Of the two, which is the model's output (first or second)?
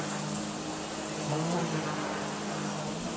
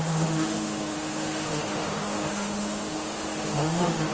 second